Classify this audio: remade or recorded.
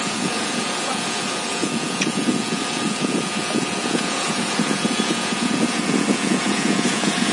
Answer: remade